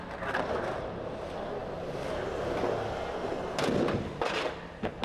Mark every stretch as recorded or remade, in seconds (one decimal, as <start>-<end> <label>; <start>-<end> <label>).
0.0-5.0 recorded